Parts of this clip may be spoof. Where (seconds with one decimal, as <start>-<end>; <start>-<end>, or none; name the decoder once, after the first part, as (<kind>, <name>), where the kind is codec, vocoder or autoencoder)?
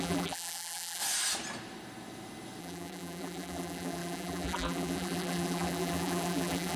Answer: 0.0-1.0 (vocoder, BigVGAN v2); 2.6-6.8